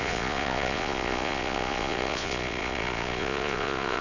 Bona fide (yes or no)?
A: no